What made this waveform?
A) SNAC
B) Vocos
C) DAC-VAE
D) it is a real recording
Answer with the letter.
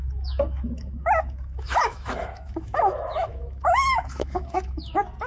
C